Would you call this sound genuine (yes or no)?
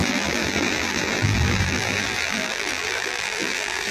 no